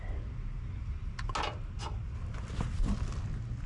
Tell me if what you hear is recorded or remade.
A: recorded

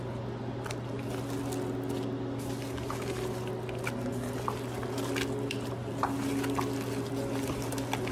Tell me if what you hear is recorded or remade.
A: recorded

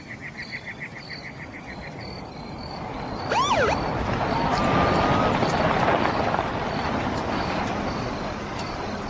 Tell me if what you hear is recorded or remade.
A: recorded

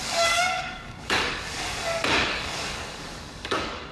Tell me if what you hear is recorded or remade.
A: remade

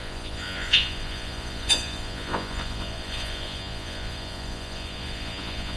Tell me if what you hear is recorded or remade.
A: remade